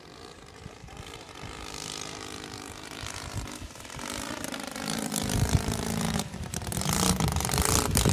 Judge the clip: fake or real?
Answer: fake